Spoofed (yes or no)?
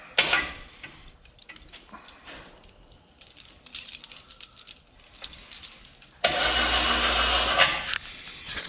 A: no